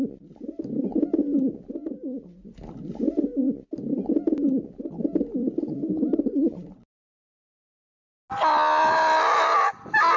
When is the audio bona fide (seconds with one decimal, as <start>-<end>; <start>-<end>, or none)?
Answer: 0.0-10.2